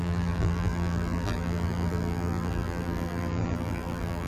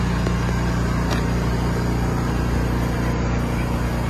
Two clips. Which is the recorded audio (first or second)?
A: second